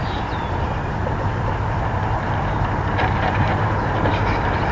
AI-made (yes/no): yes